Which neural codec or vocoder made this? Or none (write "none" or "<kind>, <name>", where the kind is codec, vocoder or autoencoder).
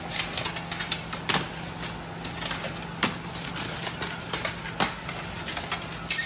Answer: none